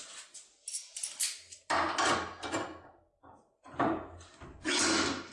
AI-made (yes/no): no